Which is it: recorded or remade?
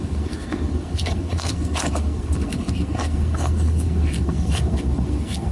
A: remade